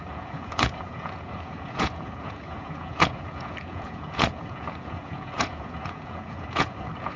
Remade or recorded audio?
remade